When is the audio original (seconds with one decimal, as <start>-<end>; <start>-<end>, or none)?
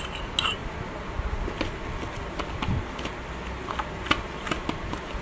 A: 0.0-5.2